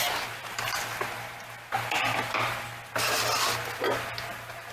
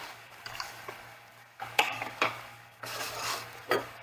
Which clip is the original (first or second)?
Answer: first